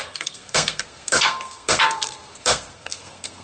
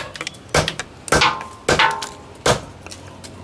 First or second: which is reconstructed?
first